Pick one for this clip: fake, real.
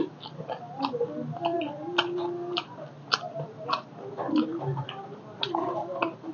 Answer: real